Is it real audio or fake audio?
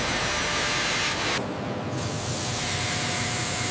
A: real